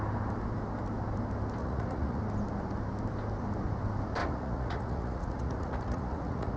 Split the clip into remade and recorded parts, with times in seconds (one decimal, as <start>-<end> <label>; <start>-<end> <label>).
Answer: 0.0-1.6 recorded; 1.6-2.2 remade; 2.2-4.2 recorded; 4.2-6.6 remade